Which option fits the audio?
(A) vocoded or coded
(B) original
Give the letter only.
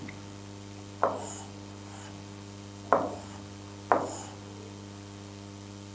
B